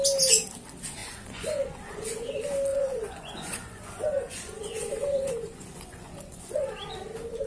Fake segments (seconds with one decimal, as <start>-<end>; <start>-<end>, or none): 1.0-2.3; 2.7-6.7